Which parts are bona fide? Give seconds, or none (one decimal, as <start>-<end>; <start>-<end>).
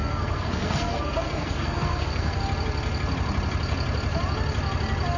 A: 2.4-5.2